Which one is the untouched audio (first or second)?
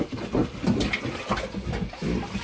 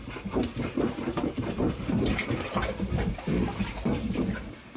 first